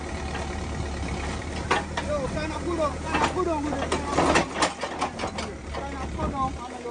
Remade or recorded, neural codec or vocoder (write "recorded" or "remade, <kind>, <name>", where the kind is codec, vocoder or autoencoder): recorded